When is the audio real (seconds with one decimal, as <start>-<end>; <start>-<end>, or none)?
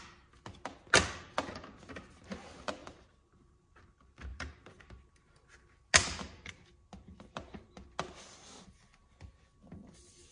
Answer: 0.0-2.8; 3.9-4.3; 4.8-10.3